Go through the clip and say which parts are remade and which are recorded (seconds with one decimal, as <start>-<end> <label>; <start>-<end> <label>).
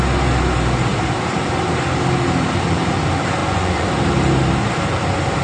0.0-3.4 recorded; 3.4-3.9 remade; 3.9-5.4 recorded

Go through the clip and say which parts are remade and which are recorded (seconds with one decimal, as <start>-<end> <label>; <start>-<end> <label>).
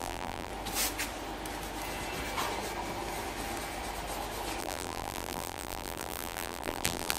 0.0-0.5 remade; 0.5-4.6 recorded; 4.6-7.2 remade